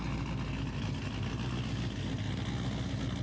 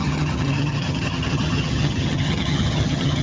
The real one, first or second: first